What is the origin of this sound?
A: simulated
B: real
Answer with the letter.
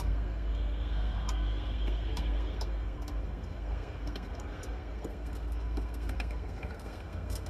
A